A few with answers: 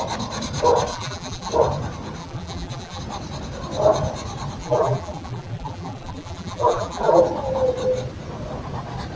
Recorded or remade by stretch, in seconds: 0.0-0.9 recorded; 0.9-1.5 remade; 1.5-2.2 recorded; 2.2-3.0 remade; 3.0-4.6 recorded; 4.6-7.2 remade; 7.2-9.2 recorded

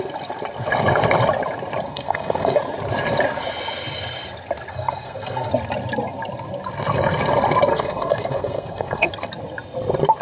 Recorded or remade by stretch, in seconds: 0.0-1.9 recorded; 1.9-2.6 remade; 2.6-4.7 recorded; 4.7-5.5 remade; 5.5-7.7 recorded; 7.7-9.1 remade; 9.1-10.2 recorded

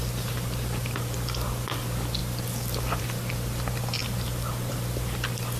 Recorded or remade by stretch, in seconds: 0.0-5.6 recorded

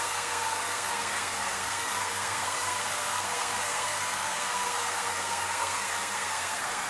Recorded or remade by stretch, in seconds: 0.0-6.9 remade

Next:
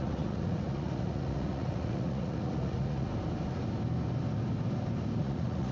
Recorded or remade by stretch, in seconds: 0.0-3.1 remade; 3.1-5.2 recorded; 5.2-5.7 remade

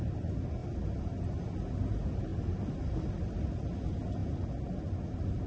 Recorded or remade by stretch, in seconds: 0.0-5.5 recorded

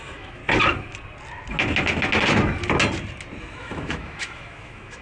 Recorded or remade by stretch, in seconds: 0.0-0.4 remade; 0.4-3.4 recorded; 3.4-5.0 remade